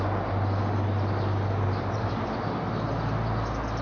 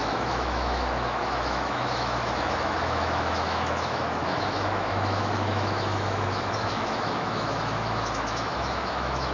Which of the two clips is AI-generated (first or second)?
second